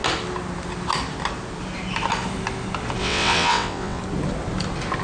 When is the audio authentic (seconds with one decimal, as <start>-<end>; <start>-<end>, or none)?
0.0-3.0; 4.0-5.0